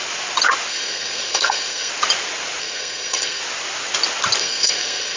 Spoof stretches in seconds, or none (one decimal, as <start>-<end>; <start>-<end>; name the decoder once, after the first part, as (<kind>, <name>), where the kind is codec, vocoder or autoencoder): 0.7-1.9 (codec, SNAC); 2.6-3.4; 4.4-5.2